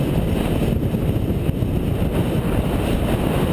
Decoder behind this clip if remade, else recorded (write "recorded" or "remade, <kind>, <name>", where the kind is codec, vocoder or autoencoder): recorded